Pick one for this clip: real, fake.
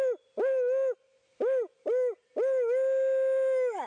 real